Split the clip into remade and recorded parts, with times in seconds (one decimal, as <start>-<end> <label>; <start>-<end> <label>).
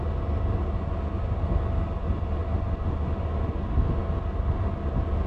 0.0-5.3 recorded